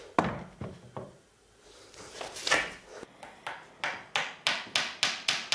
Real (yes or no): yes